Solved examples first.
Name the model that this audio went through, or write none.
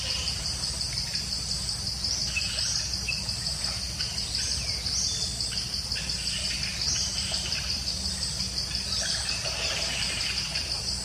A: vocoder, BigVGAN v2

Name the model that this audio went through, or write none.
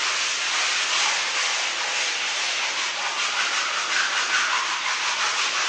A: none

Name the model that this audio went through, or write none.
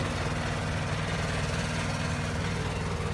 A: none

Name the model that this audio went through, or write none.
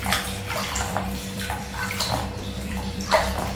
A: vocoder, BigVGAN v2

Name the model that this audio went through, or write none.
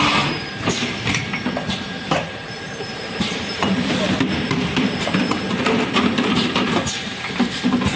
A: vocoder, BigVGAN v2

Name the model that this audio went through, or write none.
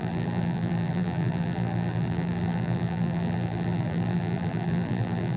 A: vocoder, BigVGAN v2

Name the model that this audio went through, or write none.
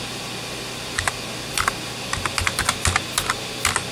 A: none